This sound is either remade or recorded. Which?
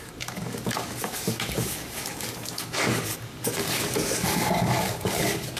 remade